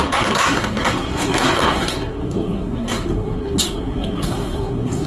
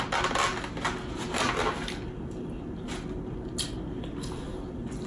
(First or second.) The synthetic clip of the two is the first